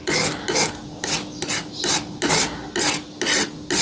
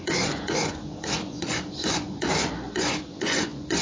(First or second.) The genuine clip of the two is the first